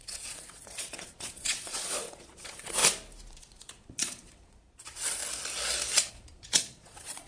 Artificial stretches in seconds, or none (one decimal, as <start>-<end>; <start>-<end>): 0.0-2.8; 3.3-5.2; 6.1-7.3